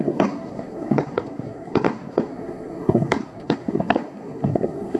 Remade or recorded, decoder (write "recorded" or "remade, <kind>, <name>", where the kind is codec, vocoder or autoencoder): remade, codec, SNAC